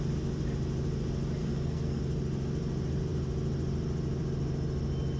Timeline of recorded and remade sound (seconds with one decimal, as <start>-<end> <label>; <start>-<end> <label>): 0.0-1.4 recorded; 1.4-2.0 remade; 2.0-5.2 recorded

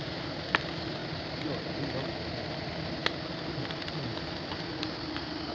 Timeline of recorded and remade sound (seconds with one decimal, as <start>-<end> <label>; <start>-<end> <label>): 0.0-5.5 recorded